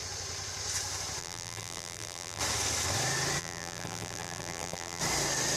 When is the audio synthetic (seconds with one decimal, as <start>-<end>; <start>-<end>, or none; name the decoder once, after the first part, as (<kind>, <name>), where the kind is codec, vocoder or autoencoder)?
1.2-2.4 (vocoder, BigVGAN v2); 3.4-5.0